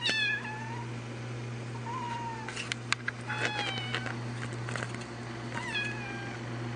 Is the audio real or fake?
real